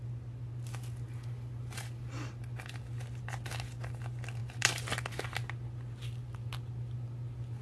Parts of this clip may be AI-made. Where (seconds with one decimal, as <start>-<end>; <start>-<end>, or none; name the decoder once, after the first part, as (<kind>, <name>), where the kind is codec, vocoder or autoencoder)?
none